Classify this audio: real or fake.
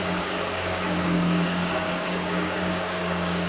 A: fake